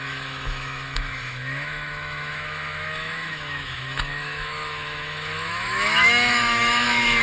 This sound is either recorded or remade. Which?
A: remade